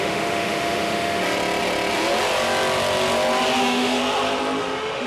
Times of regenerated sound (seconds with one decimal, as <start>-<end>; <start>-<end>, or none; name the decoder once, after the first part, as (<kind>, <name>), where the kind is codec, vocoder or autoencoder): 0.0-1.2 (autoencoder, DAC-VAE); 3.6-4.0; 4.6-5.1